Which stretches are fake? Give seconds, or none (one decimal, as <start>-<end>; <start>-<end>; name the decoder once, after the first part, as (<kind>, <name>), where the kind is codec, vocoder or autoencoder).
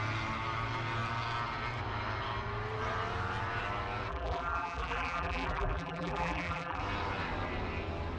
4.1-6.8 (vocoder, BigVGAN v2)